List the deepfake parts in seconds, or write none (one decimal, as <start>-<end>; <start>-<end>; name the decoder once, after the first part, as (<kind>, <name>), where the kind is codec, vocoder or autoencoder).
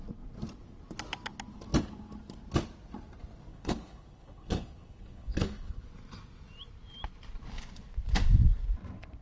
3.5-5.8 (codec, HILCodec)